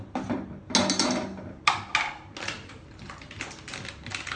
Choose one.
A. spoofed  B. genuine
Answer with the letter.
B